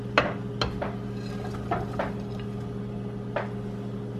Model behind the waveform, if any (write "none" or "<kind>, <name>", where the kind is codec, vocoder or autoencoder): none